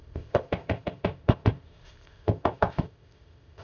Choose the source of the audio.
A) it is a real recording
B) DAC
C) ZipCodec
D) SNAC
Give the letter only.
C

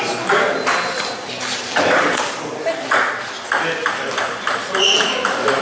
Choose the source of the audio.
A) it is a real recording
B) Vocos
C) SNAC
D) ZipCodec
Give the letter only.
A